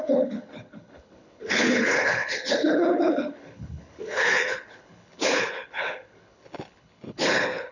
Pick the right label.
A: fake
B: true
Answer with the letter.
A